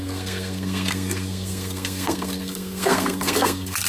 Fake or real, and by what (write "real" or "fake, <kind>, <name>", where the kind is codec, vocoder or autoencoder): fake, codec, SNAC